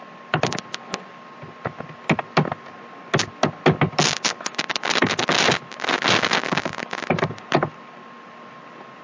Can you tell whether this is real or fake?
real